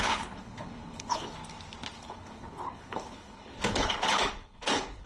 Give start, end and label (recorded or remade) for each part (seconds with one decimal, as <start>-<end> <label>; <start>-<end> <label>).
0.0-1.4 remade; 1.4-2.0 recorded; 2.0-5.1 remade